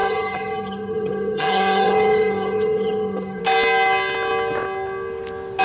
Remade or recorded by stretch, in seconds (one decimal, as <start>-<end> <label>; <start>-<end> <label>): 0.0-3.4 remade; 3.4-5.6 recorded